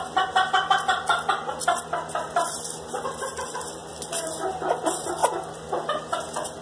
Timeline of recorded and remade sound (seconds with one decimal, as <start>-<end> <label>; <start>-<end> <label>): 0.0-6.6 recorded